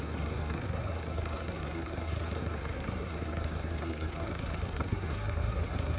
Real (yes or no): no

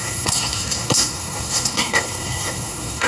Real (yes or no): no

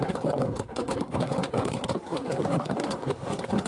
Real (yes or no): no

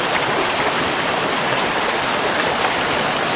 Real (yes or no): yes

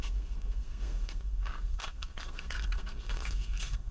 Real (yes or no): no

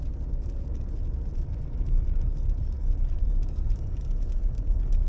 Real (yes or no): yes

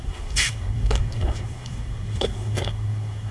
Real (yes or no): no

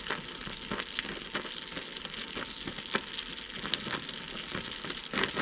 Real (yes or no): yes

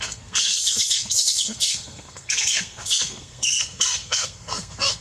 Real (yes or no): no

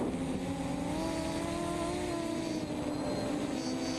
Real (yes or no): yes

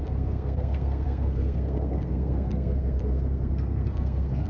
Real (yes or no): no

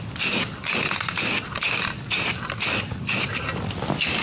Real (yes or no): yes